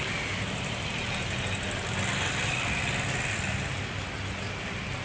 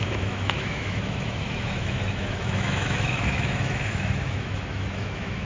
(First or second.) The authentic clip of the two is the first